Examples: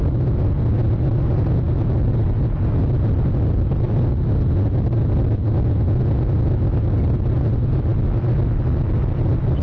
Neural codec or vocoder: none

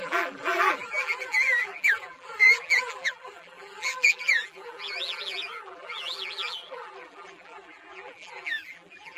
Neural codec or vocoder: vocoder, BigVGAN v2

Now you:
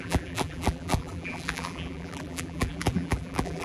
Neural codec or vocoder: vocoder, BigVGAN v2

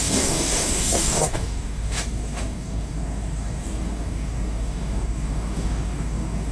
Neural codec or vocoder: codec, DAC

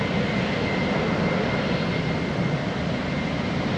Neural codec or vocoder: none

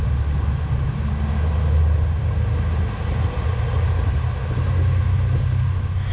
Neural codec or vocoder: none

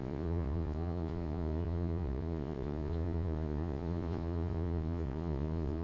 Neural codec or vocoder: vocoder, Vocos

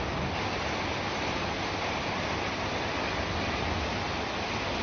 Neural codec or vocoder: none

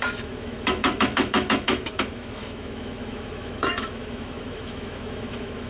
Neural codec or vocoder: autoencoder, DAC-VAE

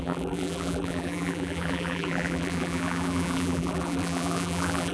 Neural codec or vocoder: vocoder, BigVGAN v2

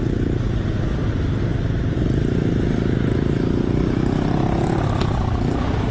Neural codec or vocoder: none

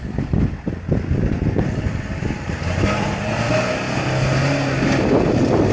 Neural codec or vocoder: none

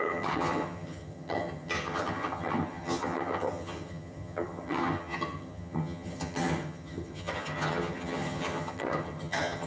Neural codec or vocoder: vocoder, HiFi-GAN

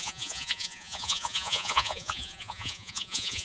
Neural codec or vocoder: vocoder, Vocos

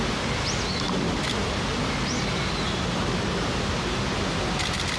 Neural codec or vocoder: none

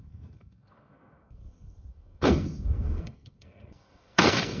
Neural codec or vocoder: codec, SNAC